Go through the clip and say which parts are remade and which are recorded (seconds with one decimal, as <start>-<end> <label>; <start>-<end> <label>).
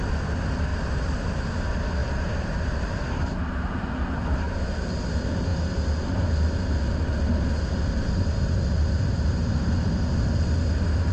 0.0-0.7 recorded; 0.7-1.6 remade; 1.6-2.0 recorded; 2.0-3.0 remade; 3.0-11.1 recorded